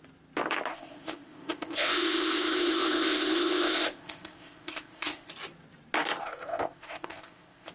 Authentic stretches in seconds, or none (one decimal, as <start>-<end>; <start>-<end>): 0.0-0.7; 5.3-6.2